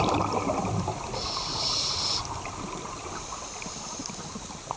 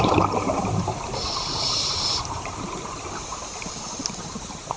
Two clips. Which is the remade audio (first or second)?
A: second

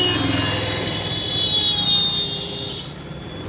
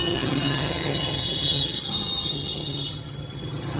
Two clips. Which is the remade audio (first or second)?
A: second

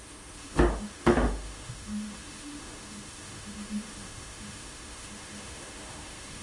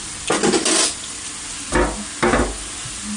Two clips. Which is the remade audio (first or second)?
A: first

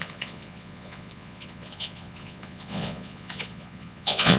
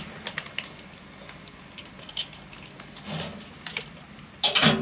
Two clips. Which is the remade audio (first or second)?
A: first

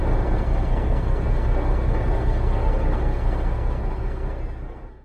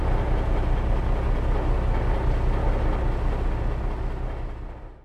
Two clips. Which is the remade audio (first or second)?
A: first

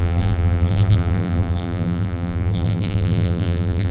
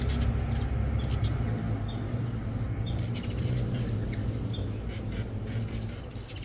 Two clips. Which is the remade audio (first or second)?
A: first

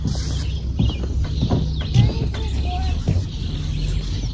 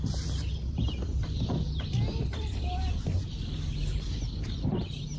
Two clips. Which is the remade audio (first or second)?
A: second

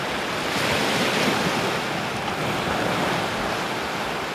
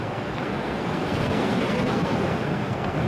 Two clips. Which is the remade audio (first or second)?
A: second